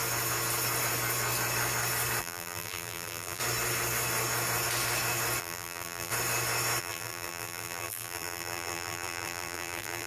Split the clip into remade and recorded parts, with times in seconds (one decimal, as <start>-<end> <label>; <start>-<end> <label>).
0.0-2.2 recorded; 2.2-3.4 remade; 3.4-5.4 recorded; 5.4-6.1 remade; 6.1-6.8 recorded; 6.8-10.1 remade